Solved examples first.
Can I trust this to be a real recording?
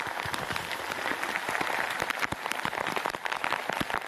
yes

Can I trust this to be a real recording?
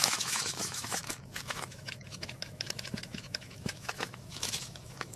no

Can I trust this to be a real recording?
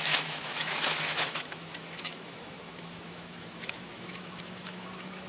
no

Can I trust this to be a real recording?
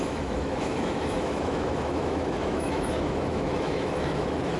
no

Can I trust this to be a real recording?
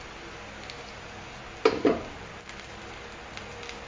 yes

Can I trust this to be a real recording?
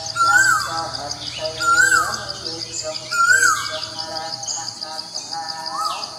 yes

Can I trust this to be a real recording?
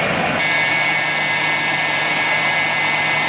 yes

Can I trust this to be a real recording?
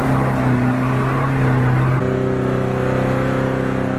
yes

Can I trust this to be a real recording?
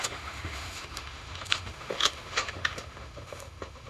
no